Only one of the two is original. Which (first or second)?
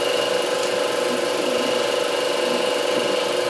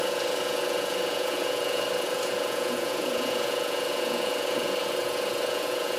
first